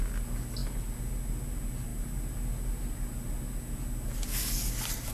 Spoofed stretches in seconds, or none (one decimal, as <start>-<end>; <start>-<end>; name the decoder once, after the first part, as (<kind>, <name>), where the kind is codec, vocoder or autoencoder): none

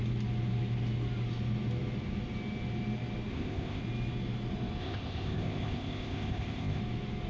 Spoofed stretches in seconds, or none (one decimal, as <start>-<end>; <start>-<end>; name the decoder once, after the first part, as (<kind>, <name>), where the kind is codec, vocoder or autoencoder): 3.3-3.8 (codec, ZipCodec); 4.8-6.8

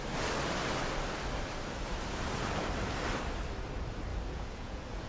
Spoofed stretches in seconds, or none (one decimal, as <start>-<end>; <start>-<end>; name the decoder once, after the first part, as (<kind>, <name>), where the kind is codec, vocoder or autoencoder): 4.1-5.1 (vocoder, Vocos)

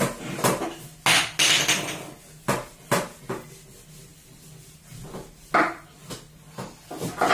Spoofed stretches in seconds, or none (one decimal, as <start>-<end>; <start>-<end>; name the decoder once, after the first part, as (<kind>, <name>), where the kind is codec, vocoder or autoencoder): none

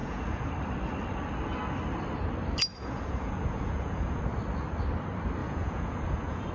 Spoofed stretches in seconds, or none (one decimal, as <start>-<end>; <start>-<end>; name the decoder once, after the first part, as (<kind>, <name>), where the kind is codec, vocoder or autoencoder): 0.0-0.5 (vocoder, Vocos); 2.7-4.2; 5.4-6.5

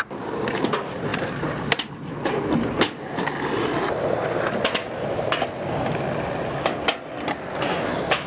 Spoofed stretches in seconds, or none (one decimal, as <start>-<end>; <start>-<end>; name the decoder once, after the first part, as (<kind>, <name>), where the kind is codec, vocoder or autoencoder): 1.1-2.1 (vocoder, BigVGAN v2)

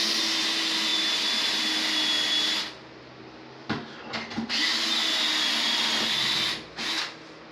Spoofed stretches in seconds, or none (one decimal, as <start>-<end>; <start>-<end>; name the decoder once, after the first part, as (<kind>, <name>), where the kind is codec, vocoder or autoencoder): 0.9-2.3 (vocoder, BigVGAN v2)

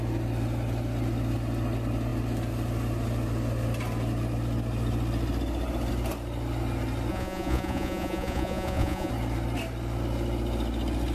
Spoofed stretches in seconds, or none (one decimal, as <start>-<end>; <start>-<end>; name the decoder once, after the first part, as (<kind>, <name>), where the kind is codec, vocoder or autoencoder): 7.1-9.1 (vocoder, Vocos)